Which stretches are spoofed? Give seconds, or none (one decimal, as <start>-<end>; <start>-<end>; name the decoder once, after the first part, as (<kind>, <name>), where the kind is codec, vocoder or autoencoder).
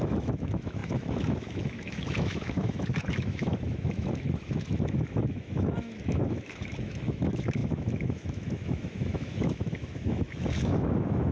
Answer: 0.0-11.3 (autoencoder, DAC-VAE)